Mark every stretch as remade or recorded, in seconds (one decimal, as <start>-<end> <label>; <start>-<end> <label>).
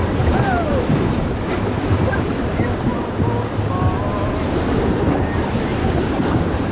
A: 0.0-5.8 recorded; 5.8-6.7 remade